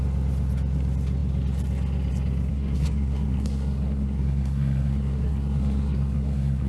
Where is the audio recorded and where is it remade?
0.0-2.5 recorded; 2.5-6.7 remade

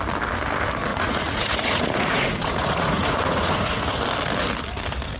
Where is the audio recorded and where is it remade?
0.0-0.9 recorded; 0.9-4.0 remade; 4.0-5.2 recorded